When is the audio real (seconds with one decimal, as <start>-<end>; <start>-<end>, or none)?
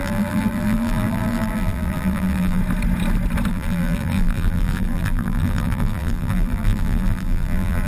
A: 2.6-3.5